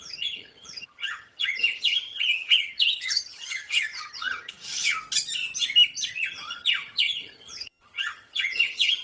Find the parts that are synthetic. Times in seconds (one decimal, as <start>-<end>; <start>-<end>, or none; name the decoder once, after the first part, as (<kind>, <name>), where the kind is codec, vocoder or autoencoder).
0.0-5.0 (vocoder, HiFi-GAN); 6.1-9.0